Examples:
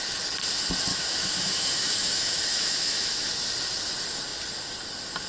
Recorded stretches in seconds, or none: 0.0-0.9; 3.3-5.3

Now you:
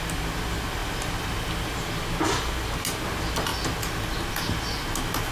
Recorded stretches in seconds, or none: 0.0-5.3

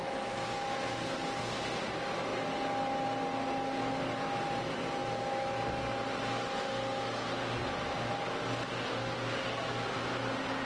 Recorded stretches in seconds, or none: 0.0-1.9; 2.3-3.9; 5.0-8.4

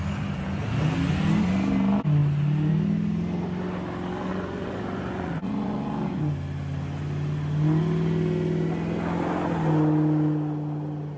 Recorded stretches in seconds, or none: 0.0-4.3; 6.2-11.2